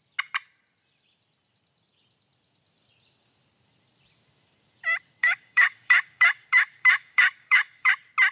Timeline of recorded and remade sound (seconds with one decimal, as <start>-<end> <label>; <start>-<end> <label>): 0.0-5.2 recorded; 5.2-7.9 remade; 7.9-8.3 recorded